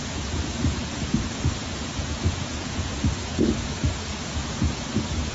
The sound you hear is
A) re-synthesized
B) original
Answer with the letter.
A